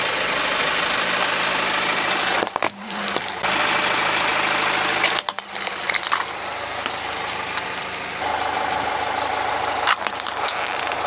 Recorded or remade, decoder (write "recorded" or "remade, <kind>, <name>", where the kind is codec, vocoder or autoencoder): remade, vocoder, BigVGAN v2